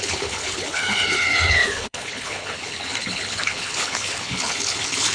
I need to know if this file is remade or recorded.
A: remade